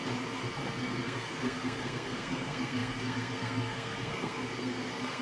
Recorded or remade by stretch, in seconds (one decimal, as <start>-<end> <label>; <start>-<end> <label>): 0.0-0.8 recorded; 0.8-5.2 remade